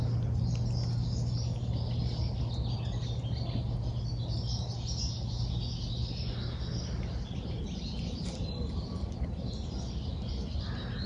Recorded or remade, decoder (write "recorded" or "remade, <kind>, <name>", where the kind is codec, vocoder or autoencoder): recorded